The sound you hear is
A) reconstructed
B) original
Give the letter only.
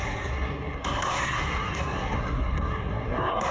A